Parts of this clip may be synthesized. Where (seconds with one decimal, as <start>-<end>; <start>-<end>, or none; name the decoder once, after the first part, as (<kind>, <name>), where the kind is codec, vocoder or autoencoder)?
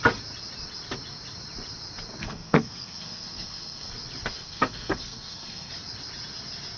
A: 2.2-3.9 (codec, SNAC); 4.3-5.7